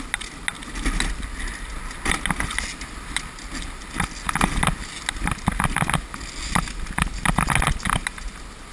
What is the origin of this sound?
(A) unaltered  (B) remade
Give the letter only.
A